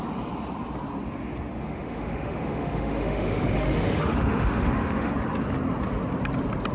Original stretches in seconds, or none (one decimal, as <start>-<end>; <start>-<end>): 0.0-1.6; 5.1-6.7